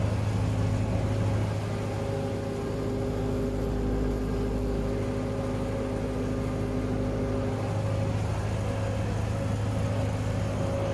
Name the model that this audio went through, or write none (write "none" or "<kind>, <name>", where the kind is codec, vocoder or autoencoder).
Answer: none